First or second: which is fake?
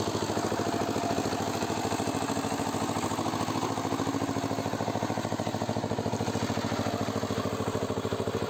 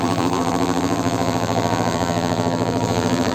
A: second